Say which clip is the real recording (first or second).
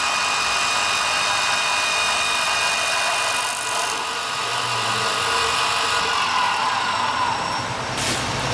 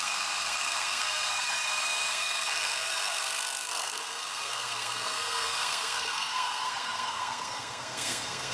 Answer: first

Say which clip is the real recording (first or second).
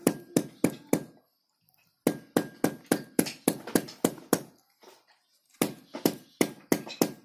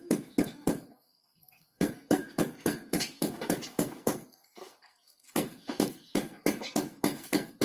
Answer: first